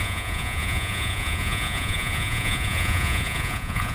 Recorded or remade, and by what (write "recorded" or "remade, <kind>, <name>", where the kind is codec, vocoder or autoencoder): remade, vocoder, Vocos